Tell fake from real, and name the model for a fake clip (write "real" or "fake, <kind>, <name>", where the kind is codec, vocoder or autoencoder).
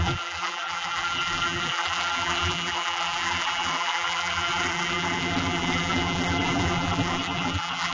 fake, vocoder, BigVGAN v2